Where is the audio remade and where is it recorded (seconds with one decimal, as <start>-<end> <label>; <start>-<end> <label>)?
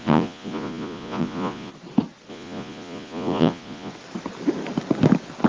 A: 0.0-1.7 remade; 1.7-2.3 recorded; 2.3-3.9 remade; 3.9-5.5 recorded